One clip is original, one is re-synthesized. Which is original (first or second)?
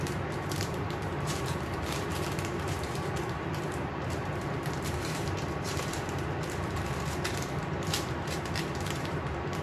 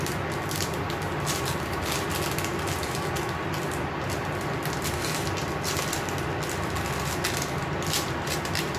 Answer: second